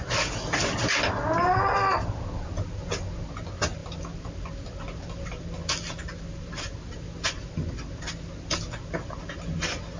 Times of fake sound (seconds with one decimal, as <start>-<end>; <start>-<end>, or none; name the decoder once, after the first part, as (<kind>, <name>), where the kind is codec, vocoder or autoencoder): none